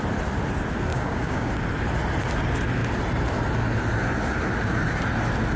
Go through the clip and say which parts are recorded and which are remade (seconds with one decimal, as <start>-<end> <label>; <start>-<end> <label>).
0.0-0.9 recorded; 0.9-1.5 remade; 1.5-5.6 recorded